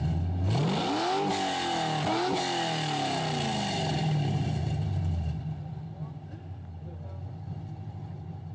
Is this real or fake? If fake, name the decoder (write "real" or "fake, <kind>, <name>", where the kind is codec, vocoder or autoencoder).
real